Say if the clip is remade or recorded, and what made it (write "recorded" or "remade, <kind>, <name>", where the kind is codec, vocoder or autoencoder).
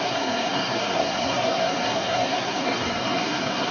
remade, codec, SNAC